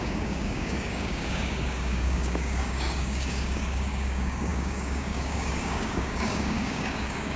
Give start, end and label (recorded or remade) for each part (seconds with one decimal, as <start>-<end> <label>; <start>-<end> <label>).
0.0-7.4 remade